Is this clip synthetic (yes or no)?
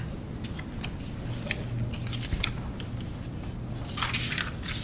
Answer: no